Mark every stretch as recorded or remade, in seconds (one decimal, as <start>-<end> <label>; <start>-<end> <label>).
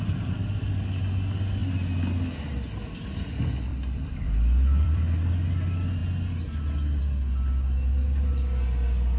0.0-3.7 recorded; 3.7-5.3 remade; 5.3-9.2 recorded